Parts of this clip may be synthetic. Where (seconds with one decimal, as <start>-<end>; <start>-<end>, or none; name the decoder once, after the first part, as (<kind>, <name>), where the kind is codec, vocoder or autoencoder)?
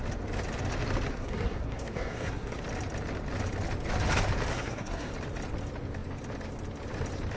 1.1-2.6 (codec, SNAC); 4.5-5.1